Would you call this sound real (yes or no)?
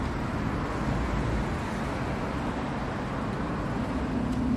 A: yes